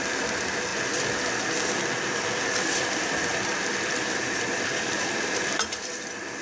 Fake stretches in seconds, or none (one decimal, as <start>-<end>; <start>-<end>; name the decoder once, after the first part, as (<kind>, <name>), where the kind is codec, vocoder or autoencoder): 0.0-0.7 (vocoder, BigVGAN v2); 2.6-6.4